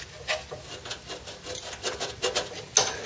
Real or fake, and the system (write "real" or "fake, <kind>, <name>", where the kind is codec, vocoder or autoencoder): real